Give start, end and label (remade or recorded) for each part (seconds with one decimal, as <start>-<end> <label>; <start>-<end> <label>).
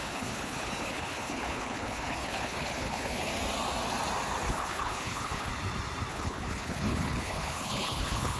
0.0-3.3 remade; 3.3-4.5 recorded; 4.5-5.5 remade; 5.5-6.1 recorded; 6.1-8.4 remade